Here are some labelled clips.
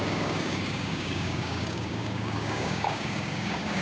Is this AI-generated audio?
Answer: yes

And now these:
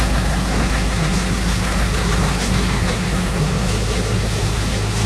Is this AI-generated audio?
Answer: yes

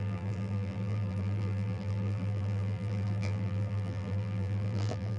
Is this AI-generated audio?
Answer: yes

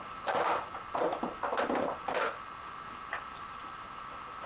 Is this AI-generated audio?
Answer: no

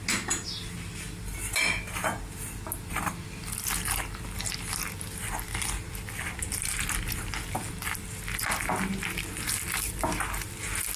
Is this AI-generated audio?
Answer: no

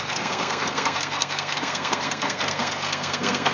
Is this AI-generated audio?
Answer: yes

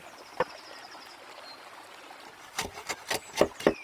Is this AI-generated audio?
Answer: no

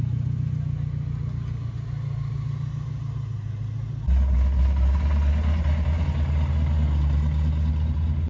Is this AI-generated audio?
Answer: no